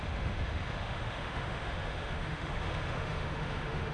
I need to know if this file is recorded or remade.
remade